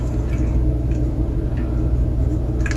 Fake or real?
real